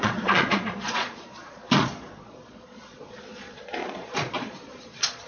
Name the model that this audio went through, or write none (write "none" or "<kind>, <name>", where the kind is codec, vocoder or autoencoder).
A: vocoder, Vocos